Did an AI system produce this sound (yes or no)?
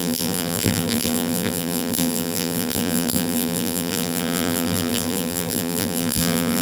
yes